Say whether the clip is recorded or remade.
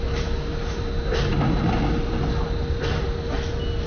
recorded